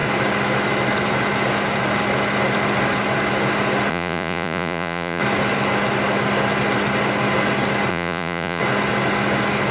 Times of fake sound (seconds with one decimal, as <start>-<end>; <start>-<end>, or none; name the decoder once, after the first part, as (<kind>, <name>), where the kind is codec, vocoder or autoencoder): 3.9-5.2 (vocoder, Vocos); 7.9-8.6